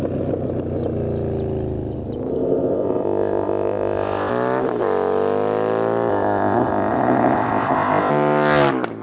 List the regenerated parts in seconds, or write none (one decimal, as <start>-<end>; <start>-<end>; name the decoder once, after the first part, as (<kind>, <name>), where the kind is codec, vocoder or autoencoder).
2.3-4.3 (codec, ZipCodec); 6.1-8.1